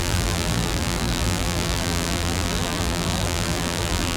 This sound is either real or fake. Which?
fake